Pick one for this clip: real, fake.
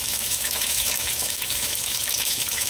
fake